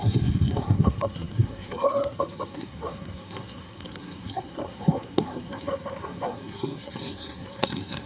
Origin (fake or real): fake